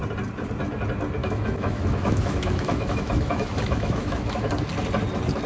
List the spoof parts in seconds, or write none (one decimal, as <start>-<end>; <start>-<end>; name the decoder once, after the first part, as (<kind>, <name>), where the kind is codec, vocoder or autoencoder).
1.2-4.5 (autoencoder, DAC-VAE)